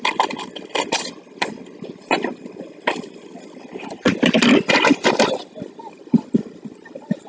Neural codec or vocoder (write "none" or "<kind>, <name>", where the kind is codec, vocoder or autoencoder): none